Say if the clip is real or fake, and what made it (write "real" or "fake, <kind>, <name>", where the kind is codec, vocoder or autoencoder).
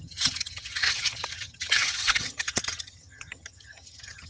fake, vocoder, HiFi-GAN